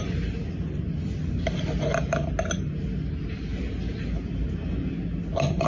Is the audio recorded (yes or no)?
yes